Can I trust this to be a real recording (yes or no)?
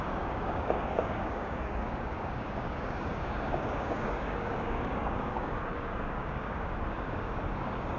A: no